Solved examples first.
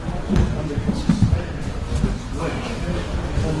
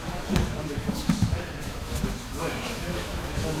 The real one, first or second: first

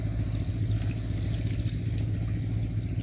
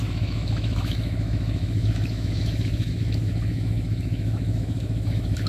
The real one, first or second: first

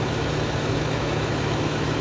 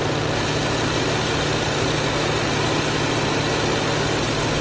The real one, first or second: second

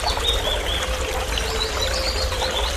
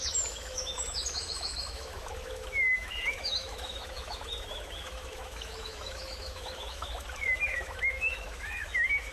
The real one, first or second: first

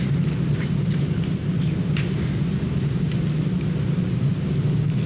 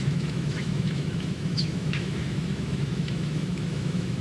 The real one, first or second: first